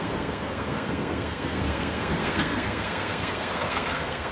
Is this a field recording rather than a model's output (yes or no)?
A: no